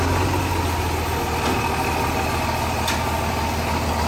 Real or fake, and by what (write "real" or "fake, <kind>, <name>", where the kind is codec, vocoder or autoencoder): real